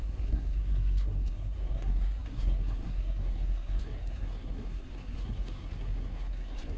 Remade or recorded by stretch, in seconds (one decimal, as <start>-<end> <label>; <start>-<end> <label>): 0.0-6.8 remade